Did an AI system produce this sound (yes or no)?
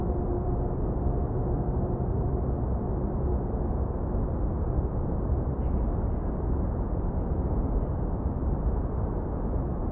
no